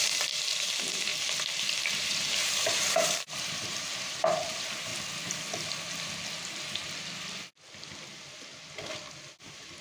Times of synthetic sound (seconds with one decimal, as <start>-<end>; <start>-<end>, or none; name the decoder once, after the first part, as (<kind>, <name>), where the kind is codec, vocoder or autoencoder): 0.0-1.1 (vocoder, BigVGAN v2); 1.9-4.9; 9.4-9.8